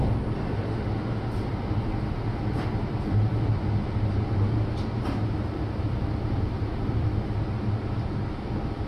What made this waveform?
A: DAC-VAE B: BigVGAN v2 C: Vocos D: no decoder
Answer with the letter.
D